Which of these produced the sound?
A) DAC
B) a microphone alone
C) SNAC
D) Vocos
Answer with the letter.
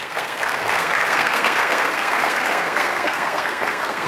C